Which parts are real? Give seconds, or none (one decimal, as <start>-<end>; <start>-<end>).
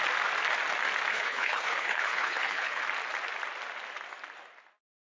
0.0-1.1; 2.8-5.2